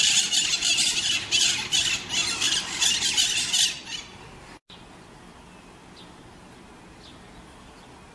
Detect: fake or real real